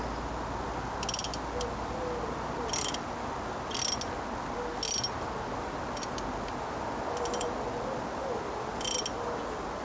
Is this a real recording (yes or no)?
yes